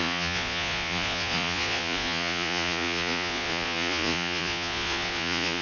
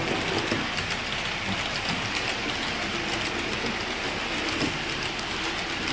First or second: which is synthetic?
first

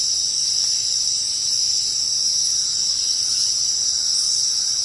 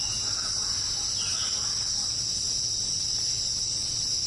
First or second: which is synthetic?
first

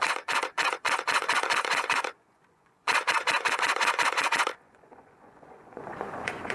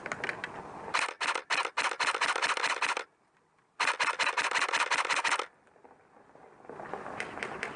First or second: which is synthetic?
first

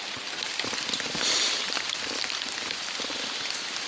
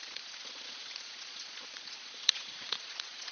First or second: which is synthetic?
second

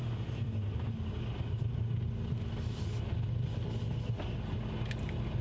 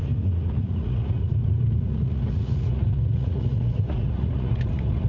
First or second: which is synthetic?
second